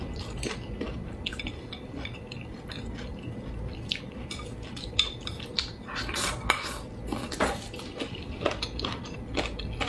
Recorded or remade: recorded